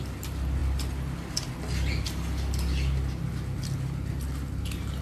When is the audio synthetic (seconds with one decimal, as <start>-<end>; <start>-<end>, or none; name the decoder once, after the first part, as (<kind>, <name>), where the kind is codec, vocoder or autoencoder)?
none